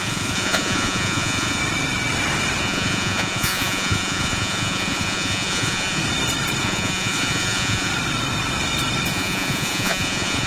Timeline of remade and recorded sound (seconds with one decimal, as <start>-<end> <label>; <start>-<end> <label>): 0.0-1.6 remade; 1.6-2.6 recorded; 2.6-6.0 remade; 6.0-6.6 recorded; 6.6-7.9 remade; 7.9-9.1 recorded; 9.1-10.5 remade